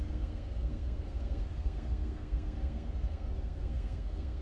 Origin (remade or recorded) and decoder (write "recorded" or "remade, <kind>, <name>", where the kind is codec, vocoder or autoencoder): remade, codec, SNAC